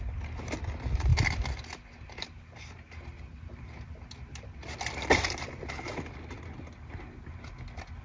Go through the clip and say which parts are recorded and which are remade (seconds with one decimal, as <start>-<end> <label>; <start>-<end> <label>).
0.0-8.0 recorded